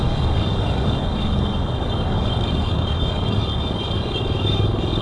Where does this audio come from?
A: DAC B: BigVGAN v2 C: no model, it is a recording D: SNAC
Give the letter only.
A